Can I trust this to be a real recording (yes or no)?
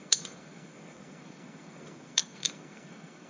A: no